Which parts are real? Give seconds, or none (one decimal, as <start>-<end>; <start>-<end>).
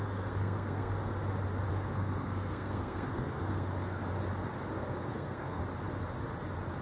1.1-1.7; 4.0-4.7; 5.6-6.8